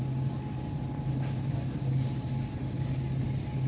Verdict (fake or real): real